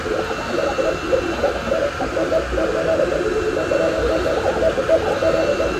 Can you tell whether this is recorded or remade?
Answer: recorded